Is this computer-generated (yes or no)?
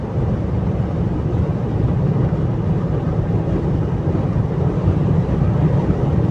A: no